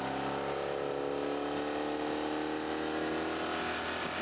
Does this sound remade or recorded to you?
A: recorded